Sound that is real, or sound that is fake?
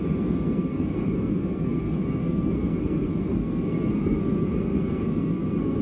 fake